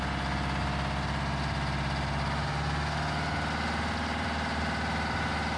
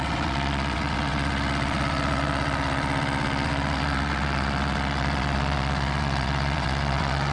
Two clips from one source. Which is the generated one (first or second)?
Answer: second